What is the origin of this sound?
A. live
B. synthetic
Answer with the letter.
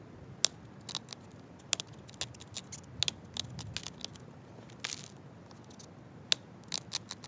A